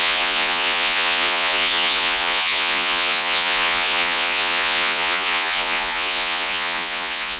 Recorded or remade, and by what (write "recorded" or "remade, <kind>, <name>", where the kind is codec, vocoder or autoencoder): remade, vocoder, Vocos